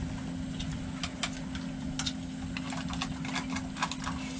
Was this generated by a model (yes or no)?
no